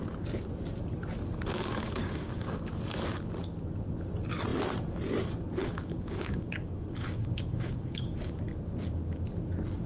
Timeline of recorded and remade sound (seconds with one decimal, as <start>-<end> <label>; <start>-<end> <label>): 0.0-1.5 recorded; 1.5-2.6 remade; 2.6-5.6 recorded; 5.6-8.4 remade; 8.4-9.9 recorded